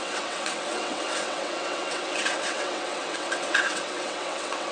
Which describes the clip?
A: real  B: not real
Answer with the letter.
B